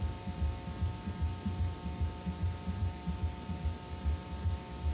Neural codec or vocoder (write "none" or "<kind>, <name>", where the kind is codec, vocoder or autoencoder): none